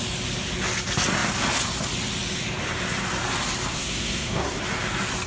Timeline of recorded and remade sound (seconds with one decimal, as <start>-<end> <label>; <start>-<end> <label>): 0.0-3.7 recorded; 3.7-4.6 remade; 4.6-5.3 recorded